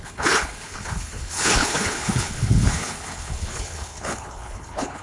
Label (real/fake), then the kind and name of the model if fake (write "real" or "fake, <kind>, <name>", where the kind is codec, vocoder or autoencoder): fake, codec, HILCodec